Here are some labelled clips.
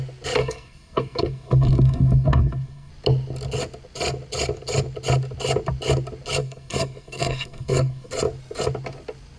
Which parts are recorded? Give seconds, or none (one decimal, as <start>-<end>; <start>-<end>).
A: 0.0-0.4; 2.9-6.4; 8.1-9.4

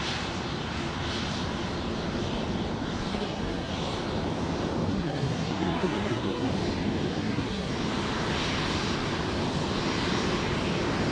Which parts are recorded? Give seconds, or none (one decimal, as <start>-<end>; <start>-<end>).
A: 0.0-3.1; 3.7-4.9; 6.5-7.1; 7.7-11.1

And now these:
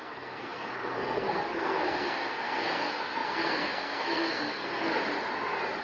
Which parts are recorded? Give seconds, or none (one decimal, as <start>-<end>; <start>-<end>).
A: 5.0-5.8

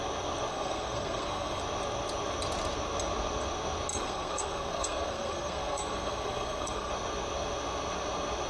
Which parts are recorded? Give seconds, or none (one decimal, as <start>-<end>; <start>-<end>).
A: 0.0-0.5; 1.6-3.9; 6.9-8.5